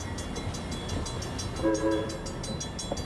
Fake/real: real